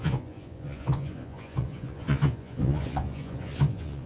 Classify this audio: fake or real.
fake